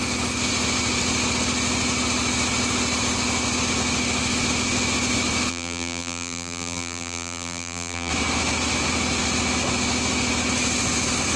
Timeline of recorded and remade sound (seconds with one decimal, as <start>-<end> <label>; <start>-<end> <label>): 0.0-5.5 recorded; 5.5-8.1 remade; 8.1-11.4 recorded